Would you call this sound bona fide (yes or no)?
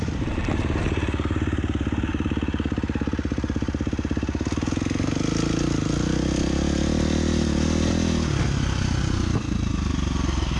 yes